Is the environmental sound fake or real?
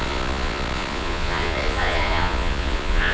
fake